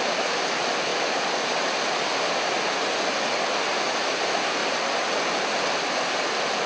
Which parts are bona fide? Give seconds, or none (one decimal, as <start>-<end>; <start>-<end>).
0.0-6.7